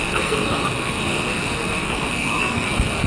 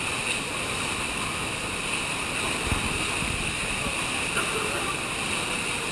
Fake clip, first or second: first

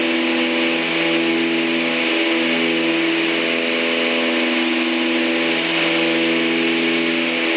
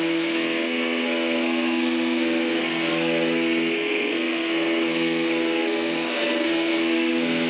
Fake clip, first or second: second